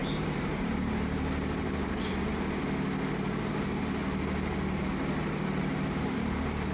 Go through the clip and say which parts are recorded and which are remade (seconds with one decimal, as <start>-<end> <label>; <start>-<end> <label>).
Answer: 0.0-2.2 remade; 2.2-6.7 recorded